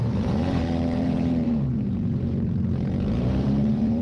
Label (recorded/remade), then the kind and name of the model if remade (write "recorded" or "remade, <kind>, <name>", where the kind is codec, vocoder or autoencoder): remade, vocoder, BigVGAN v2